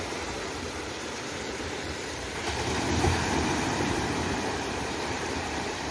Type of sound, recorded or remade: remade